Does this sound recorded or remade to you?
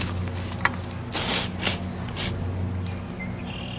recorded